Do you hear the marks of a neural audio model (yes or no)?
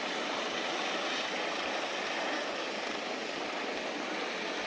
no